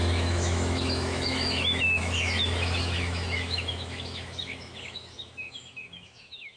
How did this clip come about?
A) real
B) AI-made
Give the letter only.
B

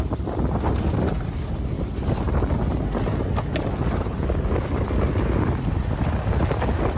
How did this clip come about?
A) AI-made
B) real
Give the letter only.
B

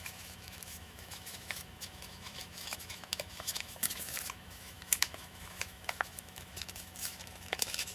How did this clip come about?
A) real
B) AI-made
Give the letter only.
B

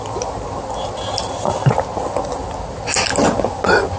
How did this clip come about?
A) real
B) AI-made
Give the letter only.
A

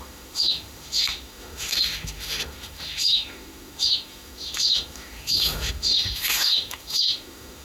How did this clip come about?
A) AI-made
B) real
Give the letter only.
A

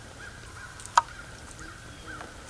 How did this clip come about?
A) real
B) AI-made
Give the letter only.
A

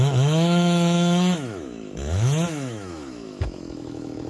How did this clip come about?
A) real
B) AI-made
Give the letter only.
B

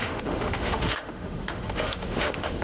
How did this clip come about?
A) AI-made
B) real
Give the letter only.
A